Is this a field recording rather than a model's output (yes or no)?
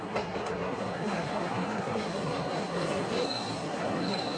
no